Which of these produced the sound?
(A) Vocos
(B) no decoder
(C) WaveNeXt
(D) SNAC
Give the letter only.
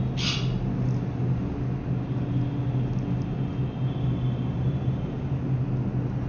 B